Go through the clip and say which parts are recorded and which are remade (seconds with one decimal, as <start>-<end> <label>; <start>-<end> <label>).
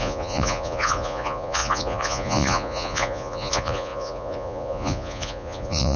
0.0-6.0 remade